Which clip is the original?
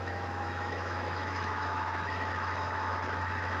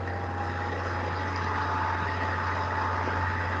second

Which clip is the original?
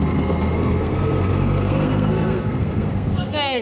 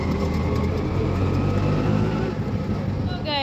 second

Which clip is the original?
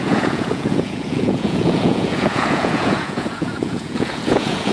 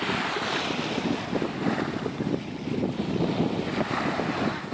second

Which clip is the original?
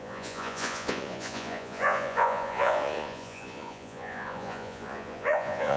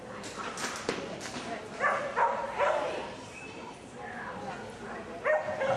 second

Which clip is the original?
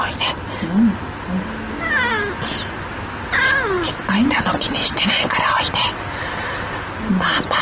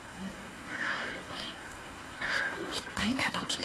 first